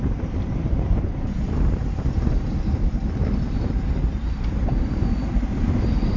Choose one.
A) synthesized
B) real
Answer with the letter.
A